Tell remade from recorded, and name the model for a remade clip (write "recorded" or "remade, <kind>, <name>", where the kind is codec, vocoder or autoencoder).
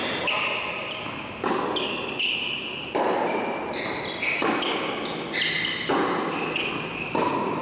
recorded